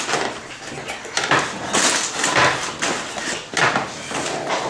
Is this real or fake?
real